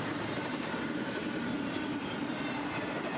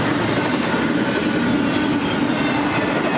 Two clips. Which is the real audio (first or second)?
second